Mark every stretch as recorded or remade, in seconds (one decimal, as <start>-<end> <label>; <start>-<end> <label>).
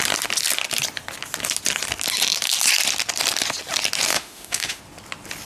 0.0-4.1 recorded; 4.1-4.8 remade; 4.8-5.4 recorded